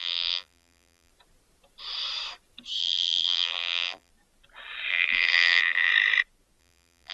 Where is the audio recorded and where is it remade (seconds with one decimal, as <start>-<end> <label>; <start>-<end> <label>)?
0.0-1.1 remade; 1.1-2.8 recorded; 2.8-4.1 remade; 4.1-4.9 recorded; 4.9-5.9 remade; 5.9-6.6 recorded; 6.6-7.1 remade